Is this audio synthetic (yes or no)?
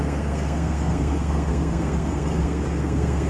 yes